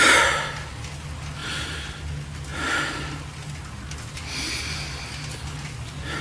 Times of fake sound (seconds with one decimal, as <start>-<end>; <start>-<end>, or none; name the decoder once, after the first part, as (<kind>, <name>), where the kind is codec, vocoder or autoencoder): none